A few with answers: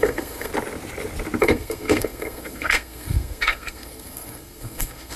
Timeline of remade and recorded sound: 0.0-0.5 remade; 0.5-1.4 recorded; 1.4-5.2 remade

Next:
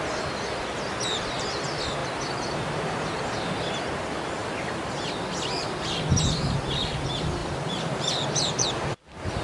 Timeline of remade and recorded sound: 0.0-2.0 recorded; 2.0-3.7 remade; 3.7-7.4 recorded; 7.4-9.0 remade; 9.0-9.4 recorded

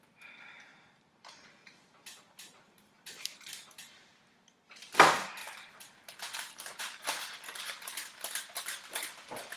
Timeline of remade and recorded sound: 0.0-0.7 recorded; 0.7-4.1 remade; 4.1-5.4 recorded; 5.4-6.8 remade; 6.8-9.6 recorded

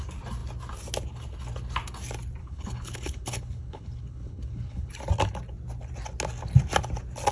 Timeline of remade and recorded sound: 0.0-2.4 recorded; 2.4-4.9 remade; 4.9-7.3 recorded

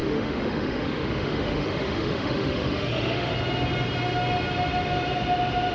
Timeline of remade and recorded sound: 0.0-3.3 remade; 3.3-5.7 recorded

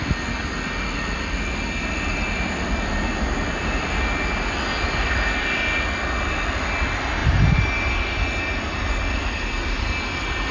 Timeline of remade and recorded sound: 0.0-10.5 recorded